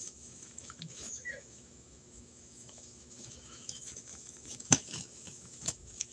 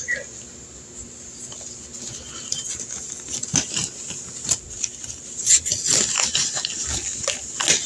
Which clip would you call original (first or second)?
second